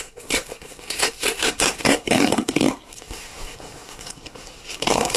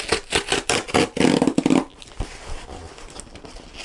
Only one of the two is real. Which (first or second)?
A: second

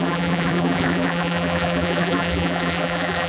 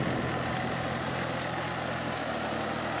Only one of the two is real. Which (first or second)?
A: second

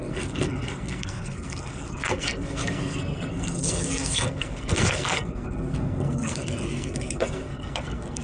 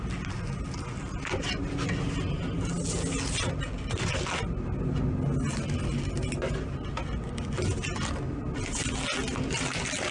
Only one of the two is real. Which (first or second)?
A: second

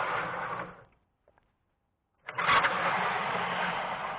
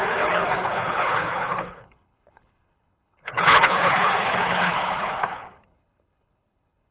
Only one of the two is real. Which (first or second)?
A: first